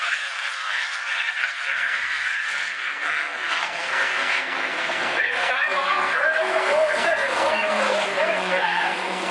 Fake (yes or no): yes